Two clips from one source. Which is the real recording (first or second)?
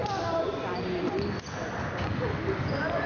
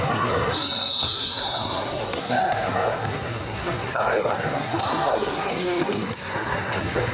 first